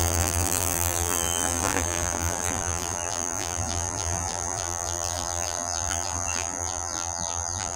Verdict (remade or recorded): remade